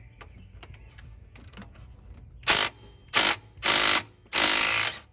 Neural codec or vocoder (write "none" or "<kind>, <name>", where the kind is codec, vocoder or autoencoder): none